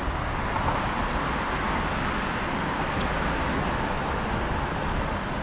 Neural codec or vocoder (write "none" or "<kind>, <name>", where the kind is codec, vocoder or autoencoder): none